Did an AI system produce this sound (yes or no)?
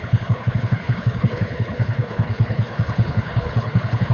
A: yes